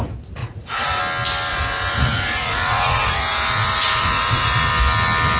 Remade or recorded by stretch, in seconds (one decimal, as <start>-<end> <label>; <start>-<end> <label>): 0.0-0.4 recorded; 0.4-1.0 remade; 1.0-1.5 recorded; 1.5-4.7 remade; 4.7-5.4 recorded